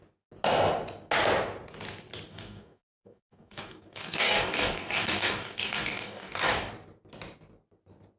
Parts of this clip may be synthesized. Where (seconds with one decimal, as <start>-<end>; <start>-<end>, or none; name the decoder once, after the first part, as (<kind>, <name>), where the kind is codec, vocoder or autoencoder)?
2.3-6.7 (codec, DAC)